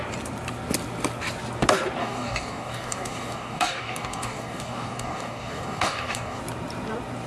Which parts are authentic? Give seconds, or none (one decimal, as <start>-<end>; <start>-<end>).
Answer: 0.0-2.0; 6.4-7.3